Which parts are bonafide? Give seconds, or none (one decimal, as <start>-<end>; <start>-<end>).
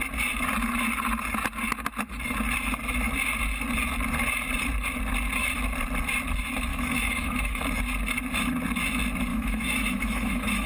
0.0-6.7; 7.6-9.3